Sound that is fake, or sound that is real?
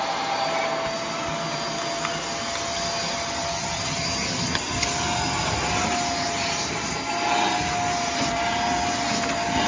real